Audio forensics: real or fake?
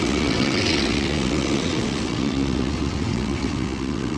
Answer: fake